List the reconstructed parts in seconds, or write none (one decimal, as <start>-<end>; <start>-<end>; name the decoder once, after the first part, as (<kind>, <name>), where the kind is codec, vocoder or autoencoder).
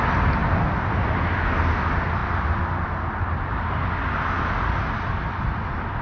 none